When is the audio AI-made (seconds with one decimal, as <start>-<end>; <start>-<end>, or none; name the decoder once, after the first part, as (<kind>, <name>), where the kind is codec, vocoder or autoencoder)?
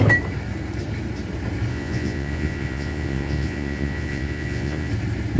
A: 1.7-4.9 (vocoder, Vocos)